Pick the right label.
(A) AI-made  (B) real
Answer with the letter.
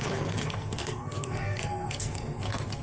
A